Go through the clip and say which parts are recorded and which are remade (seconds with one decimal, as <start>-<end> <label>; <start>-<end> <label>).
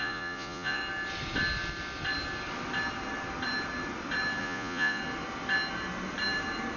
0.0-0.8 remade; 0.8-4.4 recorded; 4.4-5.0 remade; 5.0-6.8 recorded